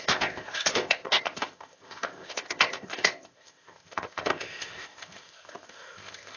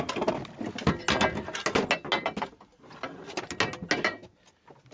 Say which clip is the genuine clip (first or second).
second